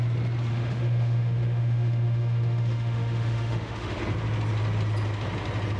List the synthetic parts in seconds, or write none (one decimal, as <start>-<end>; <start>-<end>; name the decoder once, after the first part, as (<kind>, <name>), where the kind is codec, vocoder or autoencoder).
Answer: 0.5-4.0 (autoencoder, DAC-VAE)